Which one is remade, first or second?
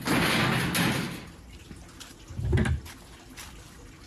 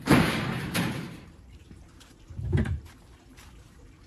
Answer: second